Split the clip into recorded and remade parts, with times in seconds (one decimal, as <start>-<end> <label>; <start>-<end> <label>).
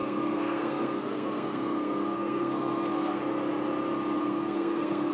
0.0-3.2 remade; 3.2-4.2 recorded; 4.2-5.1 remade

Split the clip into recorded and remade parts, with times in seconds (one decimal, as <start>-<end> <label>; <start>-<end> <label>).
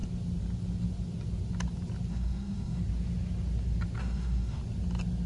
0.0-2.1 recorded; 2.1-2.8 remade; 2.8-4.0 recorded; 4.0-4.6 remade; 4.6-5.3 recorded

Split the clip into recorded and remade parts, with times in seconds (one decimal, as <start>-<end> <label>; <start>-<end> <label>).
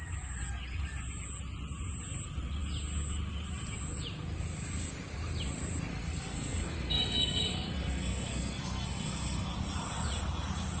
0.0-5.9 recorded; 5.9-9.5 remade; 9.5-10.8 recorded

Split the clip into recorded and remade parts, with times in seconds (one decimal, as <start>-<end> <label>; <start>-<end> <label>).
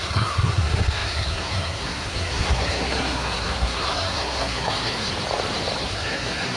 0.0-5.1 remade; 5.1-5.8 recorded; 5.8-6.6 remade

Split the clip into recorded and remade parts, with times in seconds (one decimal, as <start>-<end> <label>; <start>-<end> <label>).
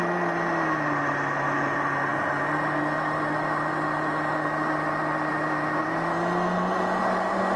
0.0-7.6 recorded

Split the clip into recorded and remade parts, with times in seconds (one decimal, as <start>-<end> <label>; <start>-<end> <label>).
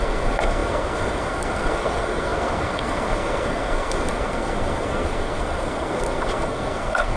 0.0-7.2 remade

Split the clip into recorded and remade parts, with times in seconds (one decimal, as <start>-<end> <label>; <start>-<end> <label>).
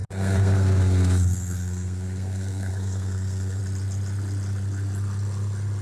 0.0-3.6 remade; 3.6-5.8 recorded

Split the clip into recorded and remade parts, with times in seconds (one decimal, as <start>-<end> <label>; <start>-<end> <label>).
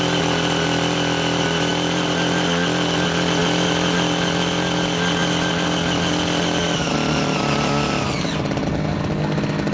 0.0-9.7 recorded